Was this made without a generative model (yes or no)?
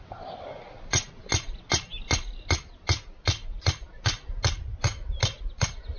yes